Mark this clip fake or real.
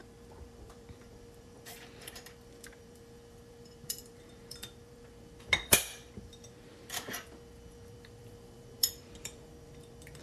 fake